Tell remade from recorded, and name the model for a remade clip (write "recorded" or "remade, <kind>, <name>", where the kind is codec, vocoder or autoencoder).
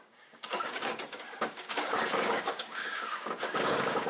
remade, codec, DAC